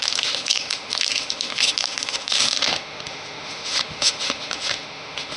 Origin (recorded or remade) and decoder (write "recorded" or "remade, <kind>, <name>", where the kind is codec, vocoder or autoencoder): remade, autoencoder, DAC-VAE